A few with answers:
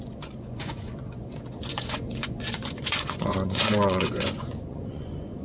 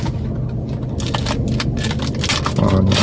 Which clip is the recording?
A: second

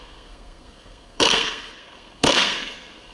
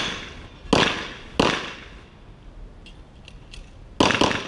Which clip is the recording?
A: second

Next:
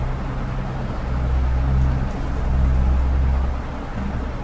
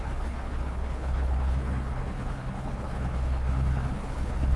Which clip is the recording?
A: first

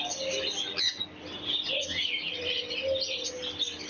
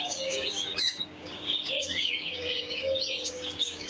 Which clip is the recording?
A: first